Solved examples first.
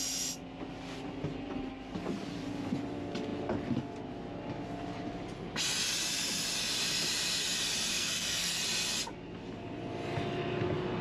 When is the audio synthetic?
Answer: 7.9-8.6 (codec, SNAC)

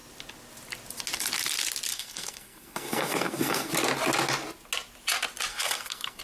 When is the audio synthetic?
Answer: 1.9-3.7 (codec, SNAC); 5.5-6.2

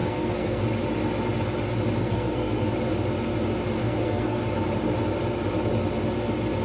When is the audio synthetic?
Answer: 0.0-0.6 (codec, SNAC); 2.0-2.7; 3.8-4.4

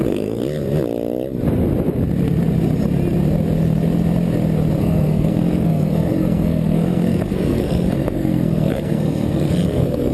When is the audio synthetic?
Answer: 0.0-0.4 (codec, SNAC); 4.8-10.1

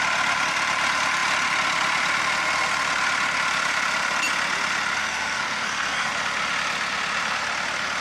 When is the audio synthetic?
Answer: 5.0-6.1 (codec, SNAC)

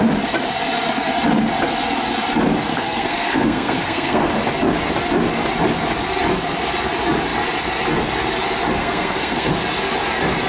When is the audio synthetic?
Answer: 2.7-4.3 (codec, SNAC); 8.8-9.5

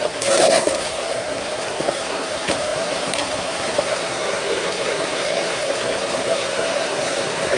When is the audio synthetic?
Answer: 0.0-7.6 (codec, SNAC)